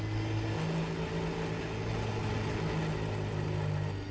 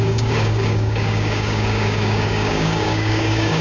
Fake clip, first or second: second